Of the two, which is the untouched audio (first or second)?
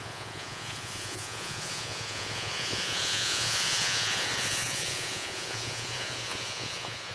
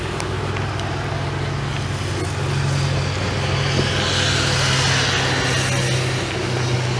second